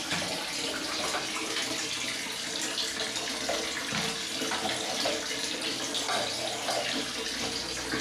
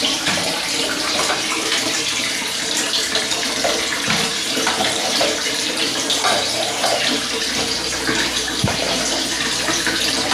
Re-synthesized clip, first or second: second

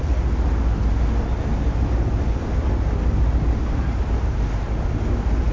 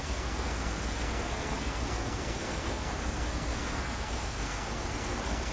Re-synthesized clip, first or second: second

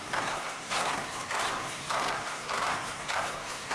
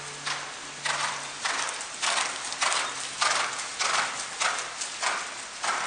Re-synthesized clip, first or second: first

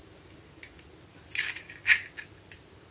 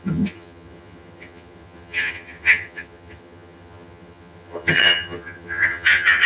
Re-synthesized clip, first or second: second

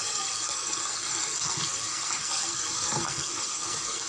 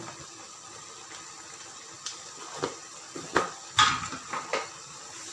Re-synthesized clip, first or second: first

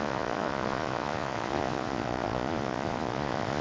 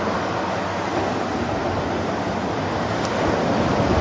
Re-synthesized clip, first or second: first